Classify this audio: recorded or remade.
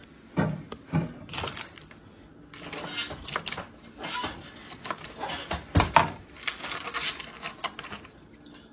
recorded